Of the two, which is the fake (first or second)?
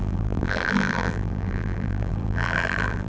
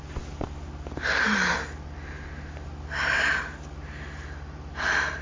first